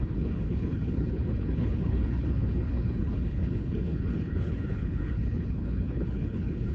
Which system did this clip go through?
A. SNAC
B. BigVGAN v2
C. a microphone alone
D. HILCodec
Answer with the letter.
D